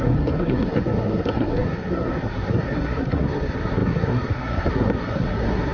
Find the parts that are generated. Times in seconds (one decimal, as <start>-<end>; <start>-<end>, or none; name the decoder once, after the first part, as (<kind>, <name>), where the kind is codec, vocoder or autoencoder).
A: 0.0-5.7 (codec, SNAC)